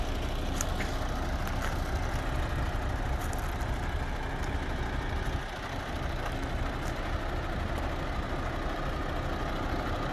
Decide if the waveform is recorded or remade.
recorded